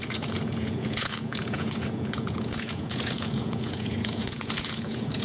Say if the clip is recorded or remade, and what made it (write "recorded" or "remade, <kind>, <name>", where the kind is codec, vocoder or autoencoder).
remade, vocoder, Vocos